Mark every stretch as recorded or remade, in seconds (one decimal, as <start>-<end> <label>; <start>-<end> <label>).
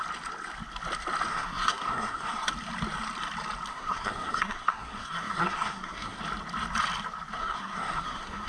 0.0-1.3 recorded; 1.3-2.5 remade; 2.5-3.7 recorded; 3.7-6.2 remade; 6.2-7.4 recorded; 7.4-8.5 remade